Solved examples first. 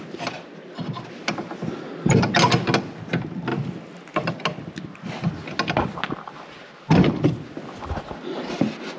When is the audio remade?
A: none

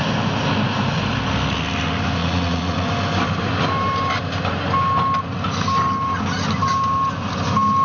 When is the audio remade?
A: 2.2-2.9 (vocoder, Vocos)

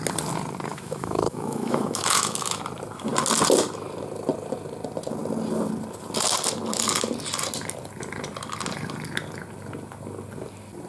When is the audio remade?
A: 0.7-2.6 (autoencoder, DAC-VAE)

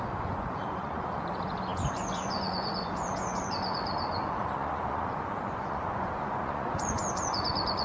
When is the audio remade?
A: 0.0-7.8 (vocoder, Vocos)